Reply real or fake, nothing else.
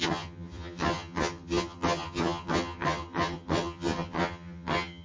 fake